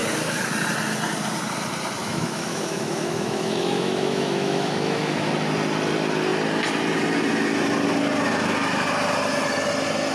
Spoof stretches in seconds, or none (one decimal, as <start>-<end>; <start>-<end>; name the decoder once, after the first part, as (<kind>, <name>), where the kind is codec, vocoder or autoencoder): 2.0-5.3 (autoencoder, DAC-VAE)